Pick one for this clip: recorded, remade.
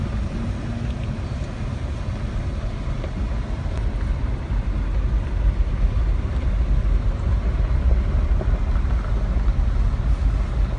recorded